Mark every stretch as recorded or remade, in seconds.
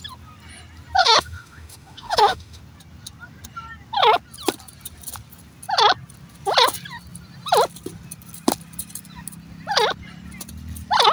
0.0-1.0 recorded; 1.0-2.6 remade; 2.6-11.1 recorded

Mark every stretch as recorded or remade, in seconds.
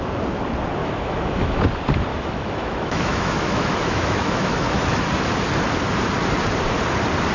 0.0-0.8 recorded; 0.8-1.6 remade; 1.6-2.1 recorded; 2.1-5.1 remade; 5.1-7.3 recorded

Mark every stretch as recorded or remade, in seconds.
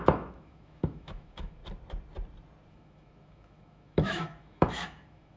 0.0-1.6 remade; 1.6-2.7 recorded; 2.7-5.4 remade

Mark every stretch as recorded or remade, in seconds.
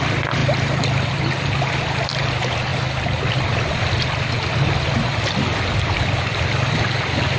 0.0-7.4 recorded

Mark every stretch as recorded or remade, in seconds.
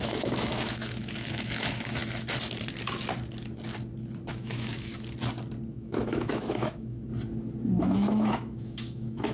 0.0-2.0 remade; 2.0-4.3 recorded; 4.3-4.9 remade; 4.9-5.7 recorded; 5.7-7.1 remade; 7.1-7.8 recorded; 7.8-9.3 remade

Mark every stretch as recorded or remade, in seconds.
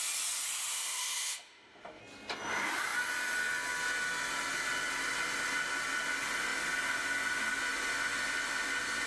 0.0-0.7 recorded; 0.7-2.0 remade; 2.0-9.1 recorded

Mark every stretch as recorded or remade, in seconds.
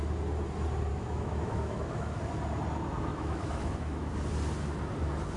0.0-0.9 recorded; 0.9-2.2 remade; 2.2-3.1 recorded; 3.1-4.1 remade; 4.1-5.4 recorded